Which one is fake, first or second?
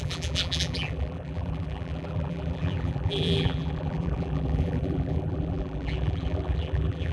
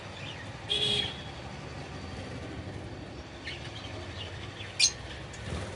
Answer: first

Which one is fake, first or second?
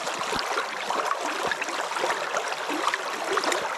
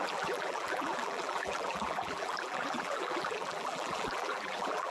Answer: second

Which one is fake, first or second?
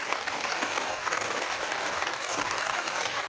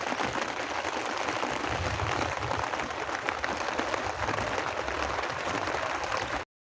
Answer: first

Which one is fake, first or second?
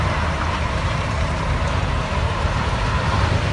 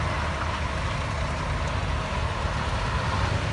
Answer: first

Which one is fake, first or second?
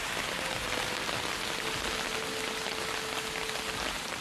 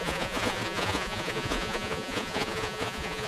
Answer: second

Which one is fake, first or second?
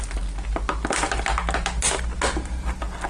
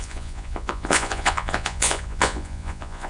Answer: second